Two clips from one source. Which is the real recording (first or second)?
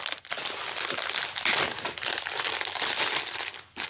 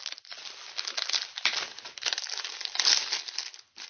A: second